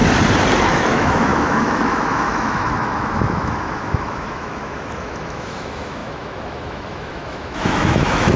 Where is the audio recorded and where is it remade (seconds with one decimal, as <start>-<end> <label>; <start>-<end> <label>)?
0.0-0.6 recorded; 0.6-8.4 remade